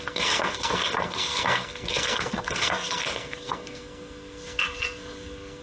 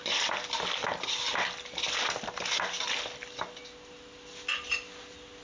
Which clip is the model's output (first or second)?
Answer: first